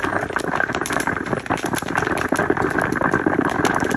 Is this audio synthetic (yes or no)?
no